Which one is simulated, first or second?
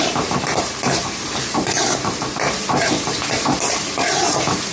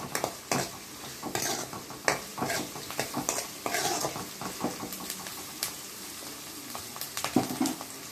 first